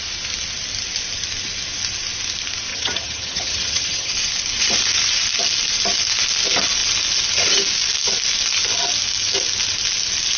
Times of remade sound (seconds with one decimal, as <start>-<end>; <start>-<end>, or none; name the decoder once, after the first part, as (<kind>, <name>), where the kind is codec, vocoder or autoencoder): 2.7-4.1 (vocoder, HiFi-GAN)